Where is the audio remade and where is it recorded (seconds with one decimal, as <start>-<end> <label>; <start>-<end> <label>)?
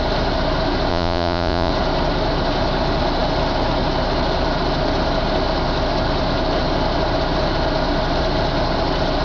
0.0-0.9 recorded; 0.9-1.7 remade; 1.7-9.2 recorded